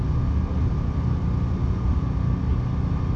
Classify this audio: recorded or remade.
recorded